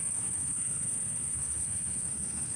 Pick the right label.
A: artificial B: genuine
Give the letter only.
A